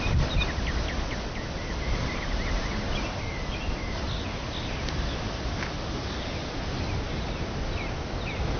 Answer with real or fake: real